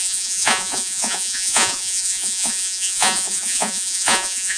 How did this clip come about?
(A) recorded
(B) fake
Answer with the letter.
B